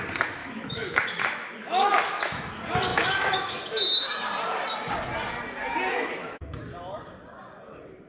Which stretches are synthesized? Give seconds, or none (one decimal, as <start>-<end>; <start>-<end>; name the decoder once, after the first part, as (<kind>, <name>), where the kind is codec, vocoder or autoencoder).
0.4-2.5 (autoencoder, DAC-VAE); 2.9-3.5; 5.9-6.6

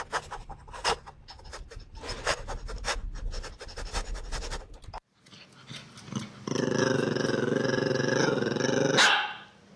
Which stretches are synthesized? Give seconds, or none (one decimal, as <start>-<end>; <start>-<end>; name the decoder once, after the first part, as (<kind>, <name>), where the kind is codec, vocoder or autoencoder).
0.8-5.4 (vocoder, BigVGAN v2)

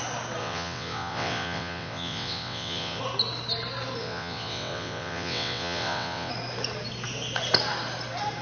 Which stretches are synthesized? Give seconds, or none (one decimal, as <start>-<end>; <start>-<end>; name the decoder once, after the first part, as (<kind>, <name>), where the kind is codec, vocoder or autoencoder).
0.4-3.0 (vocoder, WaveNeXt); 4.0-6.3

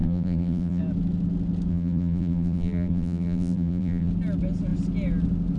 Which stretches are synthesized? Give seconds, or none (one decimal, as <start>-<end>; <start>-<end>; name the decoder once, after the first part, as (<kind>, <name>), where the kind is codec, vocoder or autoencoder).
0.0-0.8 (vocoder, BigVGAN v2); 1.7-4.1

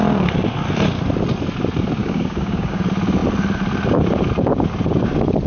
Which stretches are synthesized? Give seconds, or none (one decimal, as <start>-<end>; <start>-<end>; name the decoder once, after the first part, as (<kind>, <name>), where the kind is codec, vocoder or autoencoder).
2.0-2.8 (codec, DAC)

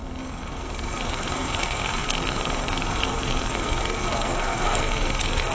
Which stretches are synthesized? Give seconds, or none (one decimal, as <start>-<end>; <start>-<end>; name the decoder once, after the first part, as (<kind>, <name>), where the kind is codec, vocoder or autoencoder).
0.0-5.5 (codec, SNAC)

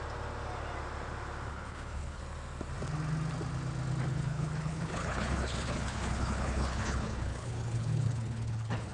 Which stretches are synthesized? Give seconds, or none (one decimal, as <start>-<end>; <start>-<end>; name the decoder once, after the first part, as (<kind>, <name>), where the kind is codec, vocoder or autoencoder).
1.5-2.2 (codec, HILCodec); 4.1-8.9